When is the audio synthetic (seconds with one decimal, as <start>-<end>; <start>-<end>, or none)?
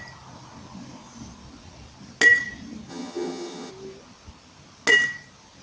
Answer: 2.9-3.7